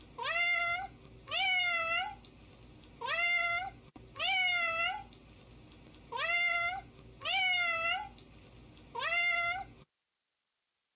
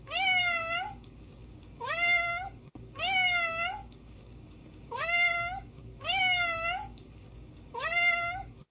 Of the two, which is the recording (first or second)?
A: first